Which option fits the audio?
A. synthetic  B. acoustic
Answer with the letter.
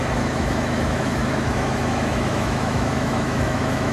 A